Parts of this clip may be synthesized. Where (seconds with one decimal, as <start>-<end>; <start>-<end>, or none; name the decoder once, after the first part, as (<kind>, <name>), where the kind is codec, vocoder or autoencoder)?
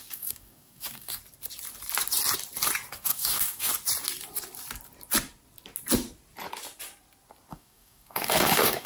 0.0-1.2 (codec, DAC); 2.9-3.7; 7.5-8.9